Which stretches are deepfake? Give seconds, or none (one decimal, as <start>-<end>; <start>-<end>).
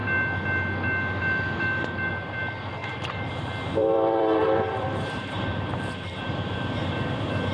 2.8-3.3; 3.8-6.2